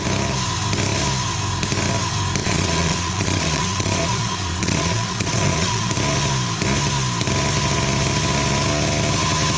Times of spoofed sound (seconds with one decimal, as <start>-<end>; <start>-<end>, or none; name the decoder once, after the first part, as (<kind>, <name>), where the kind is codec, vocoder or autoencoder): 2.4-5.9 (vocoder, Vocos)